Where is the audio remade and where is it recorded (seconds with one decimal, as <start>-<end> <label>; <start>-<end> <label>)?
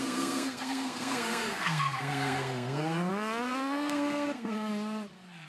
0.0-4.7 remade; 4.7-5.5 recorded